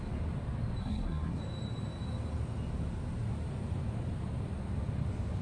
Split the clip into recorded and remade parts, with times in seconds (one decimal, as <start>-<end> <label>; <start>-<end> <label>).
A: 0.0-0.8 recorded; 0.8-1.4 remade; 1.4-5.4 recorded